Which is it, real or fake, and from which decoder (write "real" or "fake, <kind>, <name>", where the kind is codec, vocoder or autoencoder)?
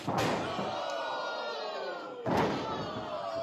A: real